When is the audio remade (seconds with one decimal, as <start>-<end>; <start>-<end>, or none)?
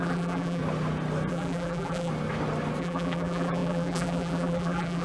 0.0-0.6; 1.3-2.1; 2.8-5.0